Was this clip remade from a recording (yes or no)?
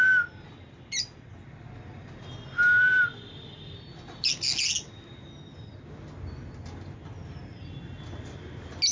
no